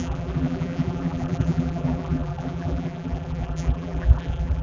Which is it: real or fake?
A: fake